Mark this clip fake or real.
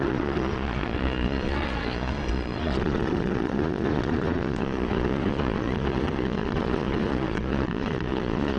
fake